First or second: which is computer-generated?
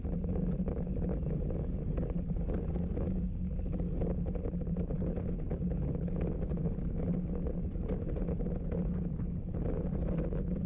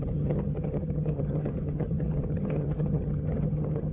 second